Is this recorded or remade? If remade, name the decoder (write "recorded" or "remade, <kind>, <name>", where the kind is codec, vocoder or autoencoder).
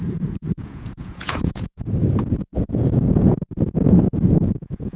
remade, vocoder, Vocos